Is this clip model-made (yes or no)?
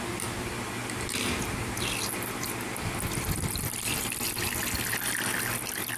no